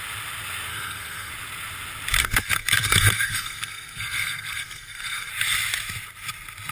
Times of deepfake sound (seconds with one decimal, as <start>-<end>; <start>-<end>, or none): 0.7-1.3; 2.2-5.3